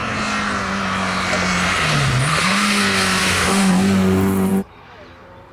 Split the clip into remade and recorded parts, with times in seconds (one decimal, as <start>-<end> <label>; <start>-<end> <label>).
0.0-2.3 recorded; 2.3-2.8 remade; 2.8-3.2 recorded; 3.2-3.7 remade; 3.7-5.5 recorded